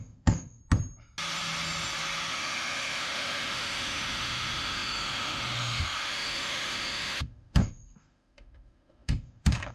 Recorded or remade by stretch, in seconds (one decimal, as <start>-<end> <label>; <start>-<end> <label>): 0.0-0.6 remade; 0.6-2.3 recorded; 2.3-9.7 remade